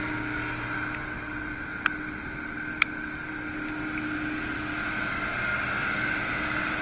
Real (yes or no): yes